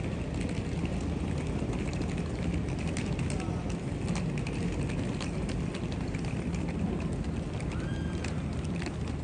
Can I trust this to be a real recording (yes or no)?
yes